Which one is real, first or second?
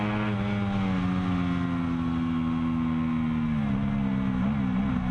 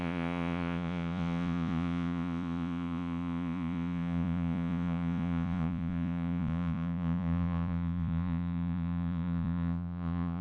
first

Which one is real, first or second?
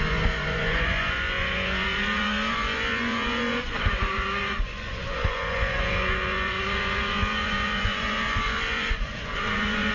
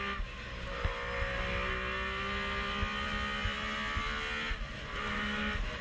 second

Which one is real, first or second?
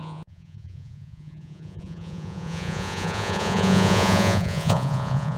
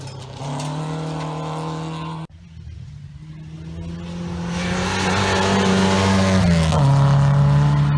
second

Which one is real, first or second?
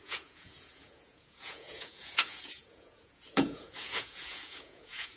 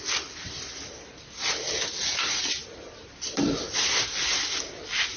second